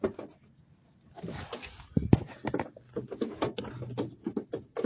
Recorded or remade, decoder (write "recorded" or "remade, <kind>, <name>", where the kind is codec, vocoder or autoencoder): recorded